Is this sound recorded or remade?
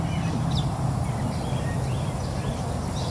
recorded